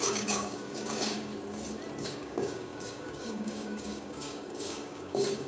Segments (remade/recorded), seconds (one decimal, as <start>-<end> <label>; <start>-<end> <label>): 0.0-1.3 remade; 1.3-2.0 recorded; 2.0-5.5 remade